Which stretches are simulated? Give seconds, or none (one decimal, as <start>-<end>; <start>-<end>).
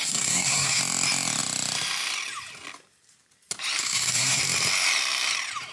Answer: 0.0-0.8; 3.8-4.4